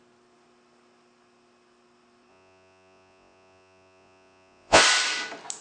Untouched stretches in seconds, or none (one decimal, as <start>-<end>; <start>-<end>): 0.0-2.3; 4.8-5.6